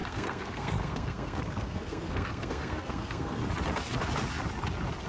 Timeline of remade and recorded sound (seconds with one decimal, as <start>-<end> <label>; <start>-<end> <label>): 0.0-3.4 remade; 3.4-5.1 recorded